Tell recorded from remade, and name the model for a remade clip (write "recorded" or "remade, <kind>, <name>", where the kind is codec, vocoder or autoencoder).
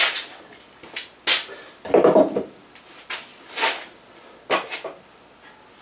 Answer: recorded